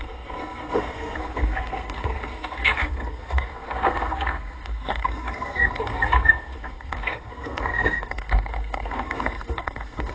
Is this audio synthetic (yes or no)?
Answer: yes